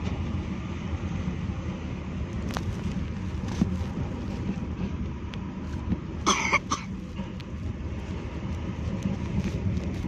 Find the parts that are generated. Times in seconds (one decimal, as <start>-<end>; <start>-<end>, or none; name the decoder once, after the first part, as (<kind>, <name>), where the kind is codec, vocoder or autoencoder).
none